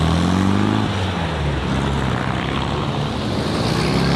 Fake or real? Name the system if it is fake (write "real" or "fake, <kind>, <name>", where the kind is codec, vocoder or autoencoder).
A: real